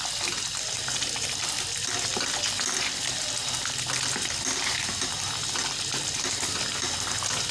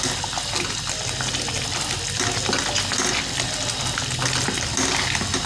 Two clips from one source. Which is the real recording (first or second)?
second